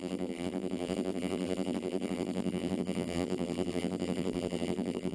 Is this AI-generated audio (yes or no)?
yes